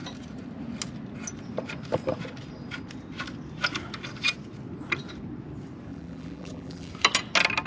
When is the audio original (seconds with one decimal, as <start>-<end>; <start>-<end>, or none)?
0.0-5.9; 6.9-7.7